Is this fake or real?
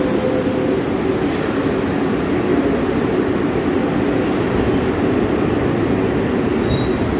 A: real